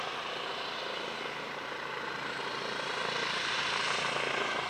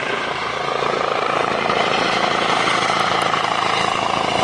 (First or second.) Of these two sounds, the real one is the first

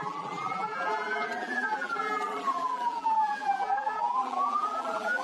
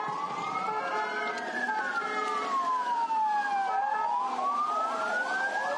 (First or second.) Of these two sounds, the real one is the second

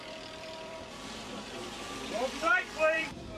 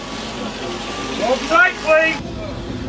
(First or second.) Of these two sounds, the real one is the second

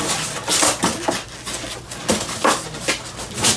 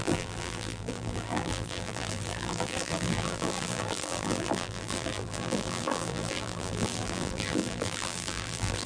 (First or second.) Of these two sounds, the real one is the first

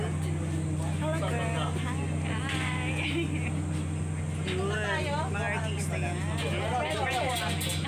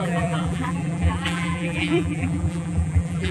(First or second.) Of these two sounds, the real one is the first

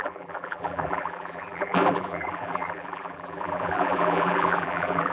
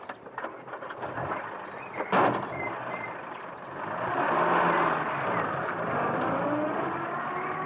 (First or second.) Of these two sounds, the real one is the second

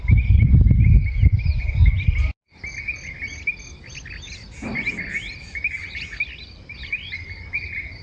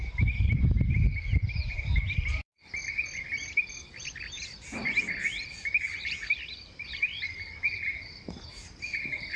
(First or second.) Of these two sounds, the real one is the first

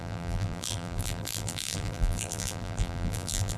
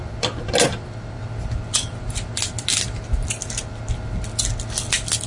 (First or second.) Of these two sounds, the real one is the second